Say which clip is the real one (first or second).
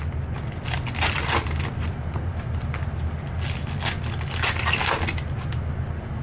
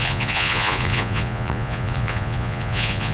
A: first